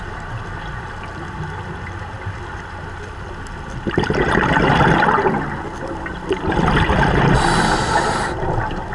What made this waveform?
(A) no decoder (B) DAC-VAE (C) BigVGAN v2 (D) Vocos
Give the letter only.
A